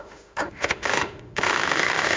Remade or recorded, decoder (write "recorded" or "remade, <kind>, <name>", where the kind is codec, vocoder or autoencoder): remade, autoencoder, DAC-VAE